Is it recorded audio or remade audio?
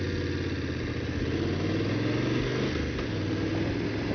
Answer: recorded